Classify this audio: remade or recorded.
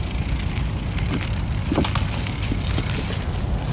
recorded